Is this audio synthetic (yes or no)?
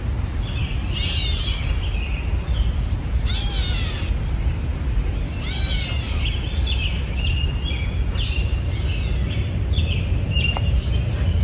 no